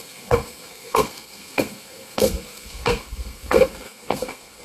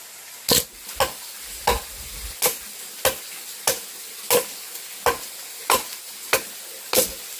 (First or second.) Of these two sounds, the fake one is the first